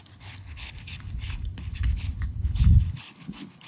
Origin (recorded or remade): remade